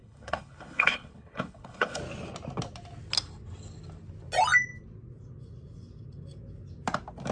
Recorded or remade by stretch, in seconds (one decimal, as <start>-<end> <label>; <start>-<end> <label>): 0.0-2.0 remade; 2.0-7.3 recorded